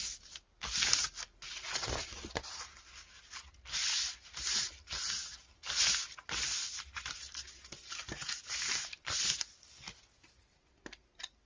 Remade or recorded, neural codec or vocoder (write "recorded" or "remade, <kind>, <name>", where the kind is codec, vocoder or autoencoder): recorded